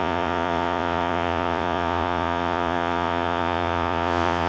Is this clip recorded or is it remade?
remade